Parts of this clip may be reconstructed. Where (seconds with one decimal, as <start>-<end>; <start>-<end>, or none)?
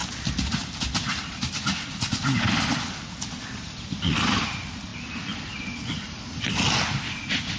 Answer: none